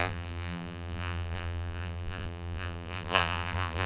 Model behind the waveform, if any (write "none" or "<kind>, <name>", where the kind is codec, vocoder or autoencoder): vocoder, BigVGAN v2